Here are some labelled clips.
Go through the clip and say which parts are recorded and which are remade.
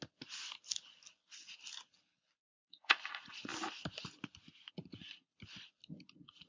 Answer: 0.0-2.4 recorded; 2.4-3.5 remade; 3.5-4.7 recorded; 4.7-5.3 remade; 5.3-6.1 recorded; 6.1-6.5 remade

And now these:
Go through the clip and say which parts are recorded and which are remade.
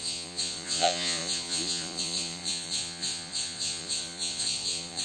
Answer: 0.0-5.0 remade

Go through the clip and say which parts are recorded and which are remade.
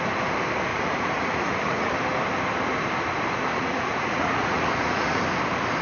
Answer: 0.0-0.7 recorded; 0.7-1.9 remade; 1.9-3.5 recorded; 3.5-5.2 remade; 5.2-5.8 recorded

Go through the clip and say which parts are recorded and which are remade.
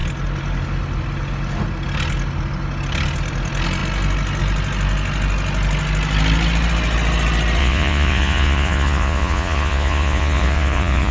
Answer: 0.0-7.6 recorded; 7.6-11.1 remade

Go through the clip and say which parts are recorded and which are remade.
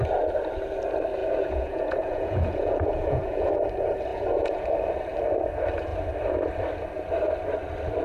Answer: 0.0-1.2 recorded; 1.2-3.5 remade; 3.5-4.1 recorded; 4.1-4.7 remade; 4.7-8.0 recorded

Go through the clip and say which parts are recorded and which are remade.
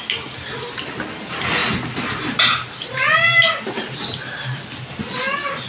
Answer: 0.0-5.7 recorded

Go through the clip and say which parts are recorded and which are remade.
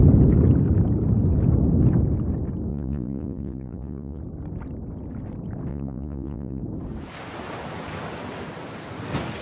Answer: 0.0-2.7 recorded; 2.7-4.2 remade; 4.2-5.7 recorded; 5.7-6.6 remade; 6.6-9.4 recorded